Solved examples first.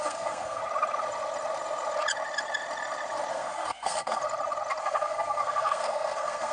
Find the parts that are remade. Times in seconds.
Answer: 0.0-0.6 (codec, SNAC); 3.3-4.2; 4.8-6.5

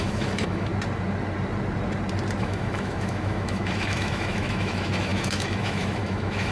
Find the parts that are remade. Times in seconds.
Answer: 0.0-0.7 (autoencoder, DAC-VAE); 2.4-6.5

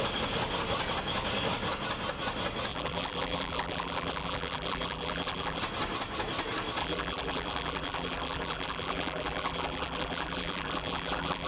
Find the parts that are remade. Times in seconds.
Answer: 2.7-5.6 (vocoder, BigVGAN v2); 6.8-11.5

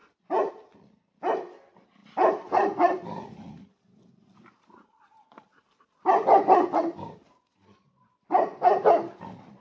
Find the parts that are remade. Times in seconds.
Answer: none

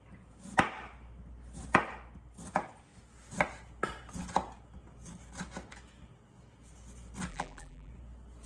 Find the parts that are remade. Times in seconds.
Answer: 7.3-7.9 (vocoder, BigVGAN v2)

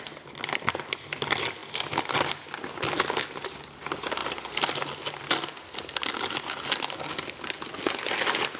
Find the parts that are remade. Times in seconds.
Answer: none

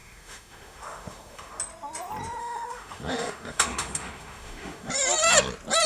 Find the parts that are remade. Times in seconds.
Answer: 0.0-1.6 (autoencoder, DAC-VAE); 2.4-4.9

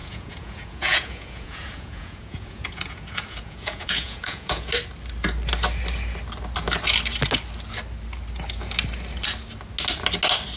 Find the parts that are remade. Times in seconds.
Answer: 0.0-4.7 (vocoder, Vocos)